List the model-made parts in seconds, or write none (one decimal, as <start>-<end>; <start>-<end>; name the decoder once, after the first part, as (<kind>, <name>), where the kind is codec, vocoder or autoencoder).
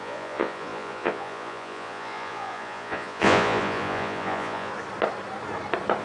0.0-4.7 (vocoder, Vocos)